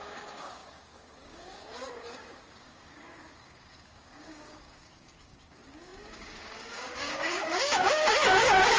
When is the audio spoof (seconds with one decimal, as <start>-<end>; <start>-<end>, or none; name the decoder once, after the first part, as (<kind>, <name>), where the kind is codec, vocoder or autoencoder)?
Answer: 0.0-8.8 (codec, DAC)